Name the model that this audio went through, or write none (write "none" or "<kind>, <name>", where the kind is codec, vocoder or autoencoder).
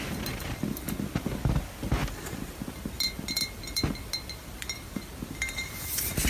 none